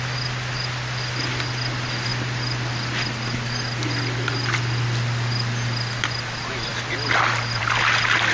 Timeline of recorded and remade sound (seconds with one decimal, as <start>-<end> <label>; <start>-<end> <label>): 0.0-8.3 recorded